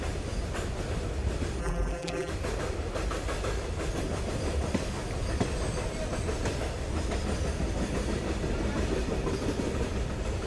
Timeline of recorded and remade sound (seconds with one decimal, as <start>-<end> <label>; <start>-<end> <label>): 0.0-1.6 recorded; 1.6-2.3 remade; 2.3-10.5 recorded